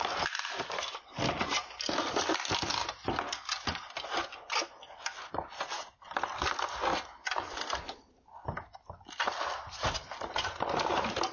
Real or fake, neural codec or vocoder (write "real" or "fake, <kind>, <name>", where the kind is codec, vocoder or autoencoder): real